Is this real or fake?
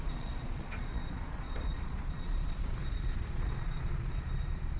fake